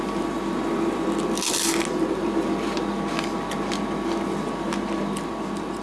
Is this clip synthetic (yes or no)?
no